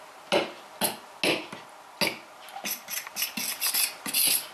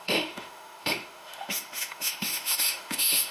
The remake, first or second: second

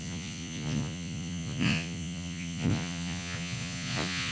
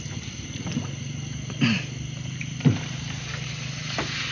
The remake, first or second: first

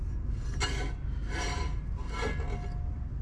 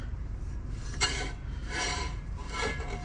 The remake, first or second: second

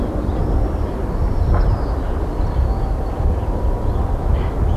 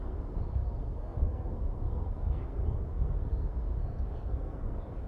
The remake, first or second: second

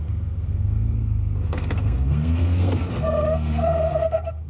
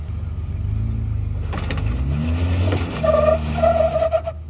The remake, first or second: first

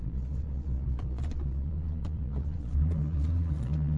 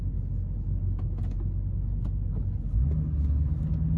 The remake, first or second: first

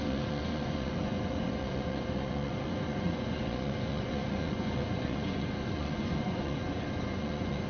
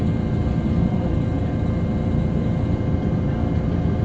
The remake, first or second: first